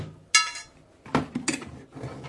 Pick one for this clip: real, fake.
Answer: real